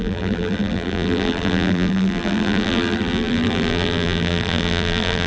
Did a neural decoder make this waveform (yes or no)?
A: yes